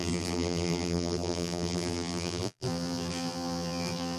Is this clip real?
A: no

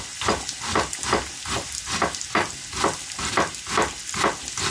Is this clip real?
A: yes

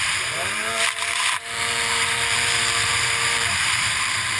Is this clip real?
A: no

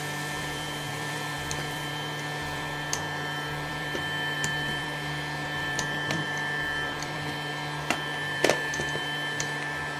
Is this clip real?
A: no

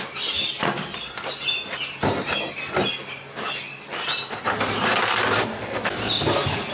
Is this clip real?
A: yes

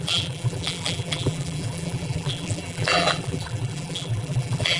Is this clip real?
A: no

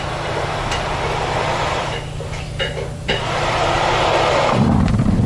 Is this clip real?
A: no